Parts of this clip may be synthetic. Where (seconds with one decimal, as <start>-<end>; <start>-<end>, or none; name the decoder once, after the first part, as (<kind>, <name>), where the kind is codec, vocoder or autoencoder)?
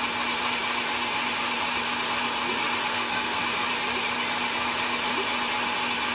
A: 2.9-3.4 (codec, SNAC)